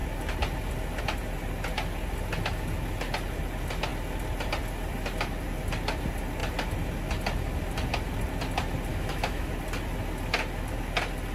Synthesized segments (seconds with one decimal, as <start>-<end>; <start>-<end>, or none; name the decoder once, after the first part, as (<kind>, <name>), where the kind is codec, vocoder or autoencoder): 8.9-9.5 (autoencoder, DAC-VAE)